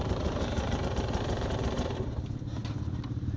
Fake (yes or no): yes